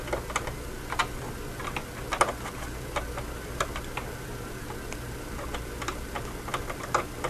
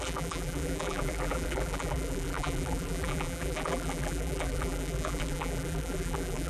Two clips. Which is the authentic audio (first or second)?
first